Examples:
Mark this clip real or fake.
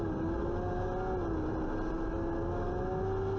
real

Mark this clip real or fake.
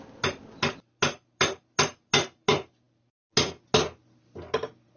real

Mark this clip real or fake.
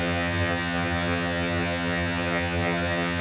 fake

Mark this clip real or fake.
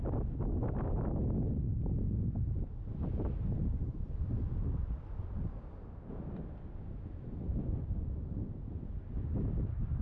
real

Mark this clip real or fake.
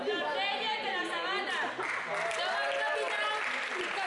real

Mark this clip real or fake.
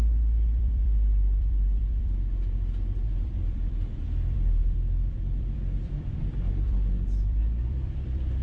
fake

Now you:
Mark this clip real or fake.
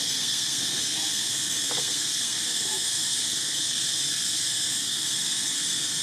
fake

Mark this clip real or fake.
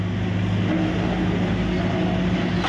real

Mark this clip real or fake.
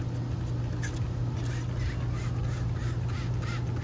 real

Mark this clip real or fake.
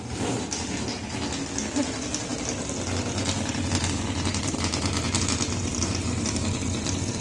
real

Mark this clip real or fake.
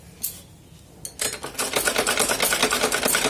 real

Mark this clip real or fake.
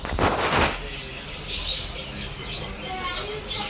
real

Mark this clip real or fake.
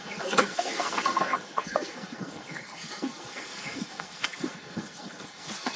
fake